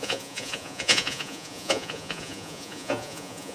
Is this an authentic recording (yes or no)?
no